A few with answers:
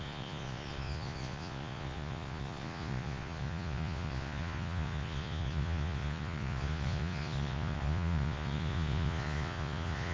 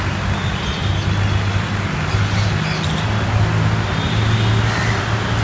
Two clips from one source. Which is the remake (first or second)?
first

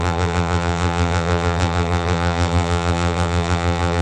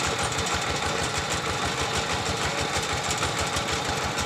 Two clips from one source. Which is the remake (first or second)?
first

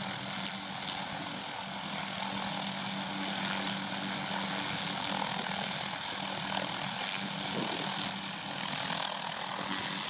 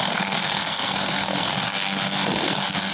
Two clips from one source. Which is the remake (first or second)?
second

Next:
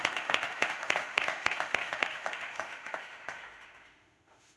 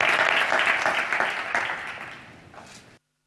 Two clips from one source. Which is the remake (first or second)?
first